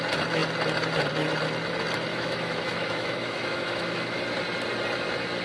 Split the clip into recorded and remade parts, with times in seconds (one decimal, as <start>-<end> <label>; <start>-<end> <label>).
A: 0.0-2.1 recorded; 2.1-4.2 remade; 4.2-5.4 recorded